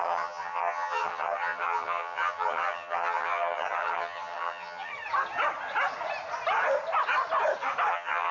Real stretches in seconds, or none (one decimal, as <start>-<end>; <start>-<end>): 4.9-7.9